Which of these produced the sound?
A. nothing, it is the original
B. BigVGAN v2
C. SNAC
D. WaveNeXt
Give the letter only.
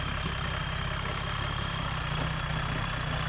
A